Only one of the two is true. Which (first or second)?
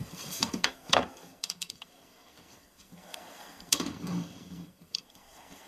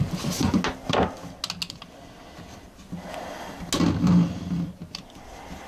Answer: second